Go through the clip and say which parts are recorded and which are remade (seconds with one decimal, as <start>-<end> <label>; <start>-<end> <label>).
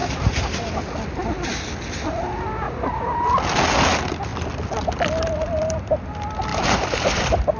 0.0-0.8 remade; 0.8-6.5 recorded; 6.5-7.6 remade